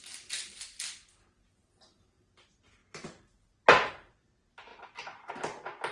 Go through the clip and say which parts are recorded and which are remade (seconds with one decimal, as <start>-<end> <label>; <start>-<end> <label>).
0.0-5.9 recorded